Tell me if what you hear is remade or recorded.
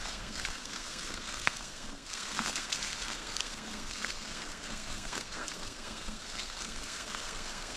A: remade